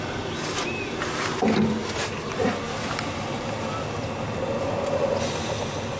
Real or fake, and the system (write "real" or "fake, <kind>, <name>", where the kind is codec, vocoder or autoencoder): real